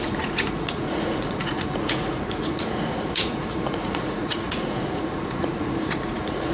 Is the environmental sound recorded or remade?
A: remade